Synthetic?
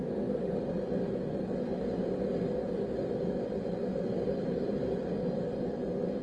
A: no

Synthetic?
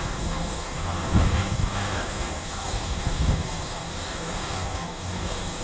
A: yes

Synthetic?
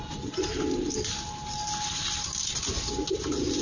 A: no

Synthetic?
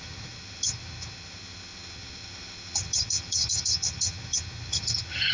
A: yes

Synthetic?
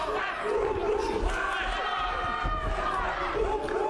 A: no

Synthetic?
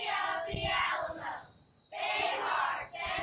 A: no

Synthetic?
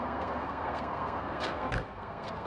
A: yes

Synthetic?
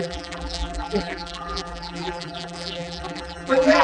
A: yes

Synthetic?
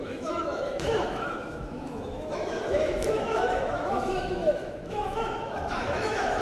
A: yes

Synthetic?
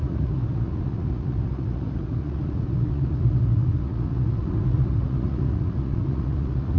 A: yes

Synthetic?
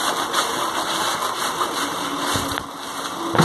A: no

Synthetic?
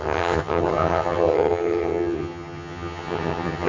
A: yes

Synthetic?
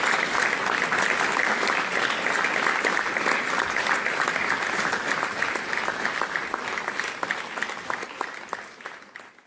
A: no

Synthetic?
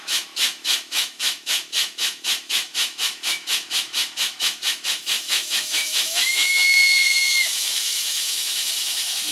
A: yes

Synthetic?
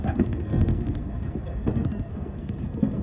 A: yes